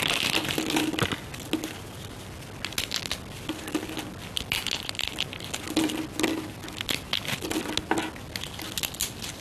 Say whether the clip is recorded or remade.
recorded